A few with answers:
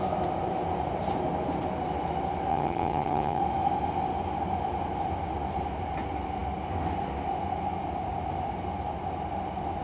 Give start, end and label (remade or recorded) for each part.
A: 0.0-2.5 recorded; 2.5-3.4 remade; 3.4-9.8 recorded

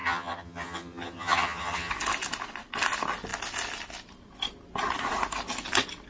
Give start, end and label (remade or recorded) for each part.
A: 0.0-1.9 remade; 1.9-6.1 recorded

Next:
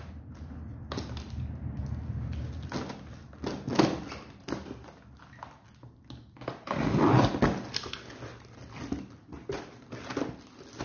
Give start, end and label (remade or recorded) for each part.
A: 0.0-10.8 recorded